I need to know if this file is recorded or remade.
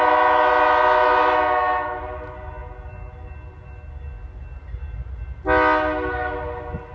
recorded